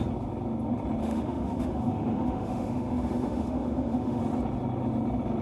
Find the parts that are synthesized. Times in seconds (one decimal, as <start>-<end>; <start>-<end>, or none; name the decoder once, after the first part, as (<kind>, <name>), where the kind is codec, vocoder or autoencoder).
1.0-4.2 (autoencoder, DAC-VAE)